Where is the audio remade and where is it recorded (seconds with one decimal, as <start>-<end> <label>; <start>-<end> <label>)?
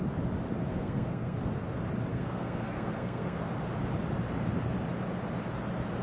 0.0-0.7 recorded; 0.7-1.4 remade; 1.4-2.1 recorded; 2.1-3.5 remade; 3.5-6.0 recorded